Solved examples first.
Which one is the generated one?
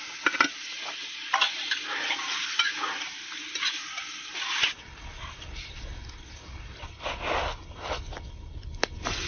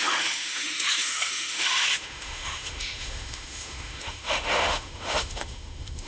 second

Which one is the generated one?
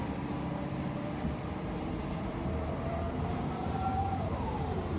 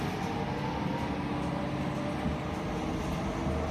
first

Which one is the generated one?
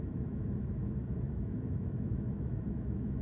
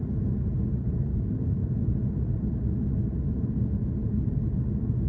first